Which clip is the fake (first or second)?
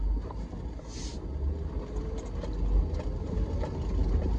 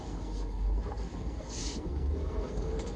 second